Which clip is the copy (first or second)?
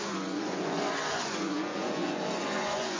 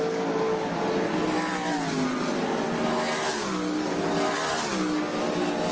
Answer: first